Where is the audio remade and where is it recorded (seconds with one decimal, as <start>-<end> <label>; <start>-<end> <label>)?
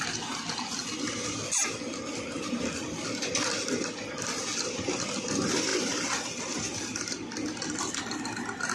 0.0-8.7 recorded